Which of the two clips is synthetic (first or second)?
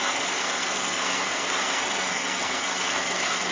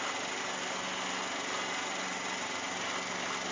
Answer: first